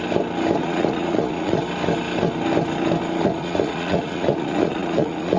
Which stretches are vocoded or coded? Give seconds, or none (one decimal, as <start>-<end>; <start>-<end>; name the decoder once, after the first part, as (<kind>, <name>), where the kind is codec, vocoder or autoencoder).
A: 0.6-1.6 (vocoder, Vocos); 3.2-5.4